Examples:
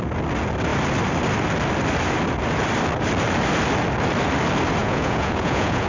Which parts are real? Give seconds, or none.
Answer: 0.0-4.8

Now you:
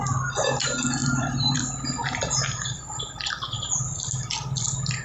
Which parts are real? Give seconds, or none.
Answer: 0.0-1.0; 1.6-2.0

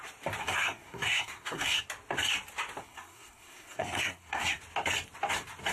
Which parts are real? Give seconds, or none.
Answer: 0.0-0.4; 1.8-2.8; 4.6-5.7

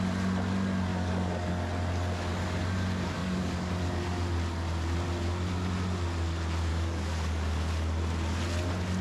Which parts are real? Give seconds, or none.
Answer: 0.0-0.9; 1.5-3.2; 3.7-6.7; 7.7-9.0